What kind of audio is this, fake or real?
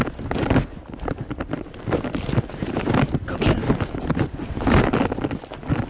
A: real